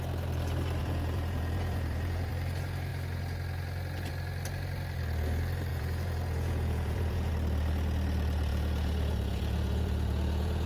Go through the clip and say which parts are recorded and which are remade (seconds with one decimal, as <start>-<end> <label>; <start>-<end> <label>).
0.0-0.8 recorded; 0.8-2.3 remade; 2.3-5.7 recorded; 5.7-7.3 remade; 7.3-8.5 recorded; 8.5-10.7 remade